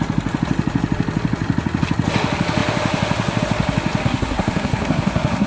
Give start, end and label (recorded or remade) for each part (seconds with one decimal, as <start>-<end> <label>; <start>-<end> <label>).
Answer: 0.0-4.0 recorded; 4.0-5.5 remade